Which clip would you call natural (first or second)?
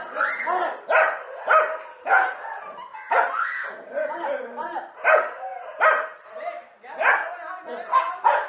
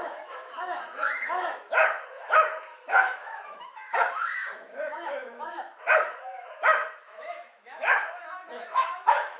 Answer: first